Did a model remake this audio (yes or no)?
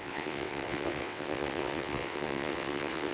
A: yes